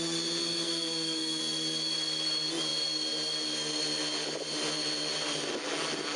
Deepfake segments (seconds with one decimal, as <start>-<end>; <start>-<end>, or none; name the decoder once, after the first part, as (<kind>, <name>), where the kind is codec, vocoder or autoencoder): 0.4-1.4 (codec, SNAC)